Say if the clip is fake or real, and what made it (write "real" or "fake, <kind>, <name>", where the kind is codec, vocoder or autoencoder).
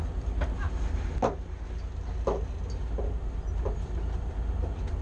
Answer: real